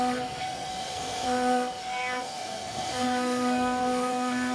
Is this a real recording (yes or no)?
no